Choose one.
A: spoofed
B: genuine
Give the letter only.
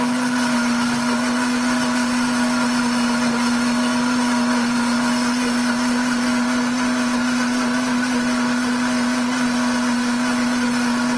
B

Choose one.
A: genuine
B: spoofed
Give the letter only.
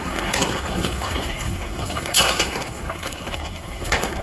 B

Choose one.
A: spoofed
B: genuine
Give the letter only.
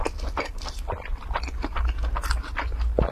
B